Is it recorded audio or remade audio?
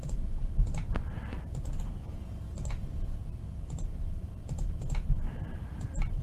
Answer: recorded